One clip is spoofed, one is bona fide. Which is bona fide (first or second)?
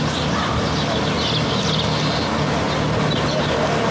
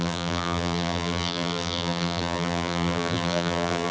first